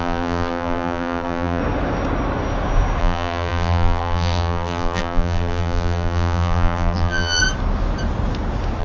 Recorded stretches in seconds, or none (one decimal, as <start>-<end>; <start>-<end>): 1.6-3.0; 7.4-8.8